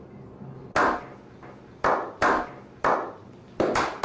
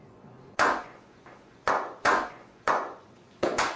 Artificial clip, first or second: second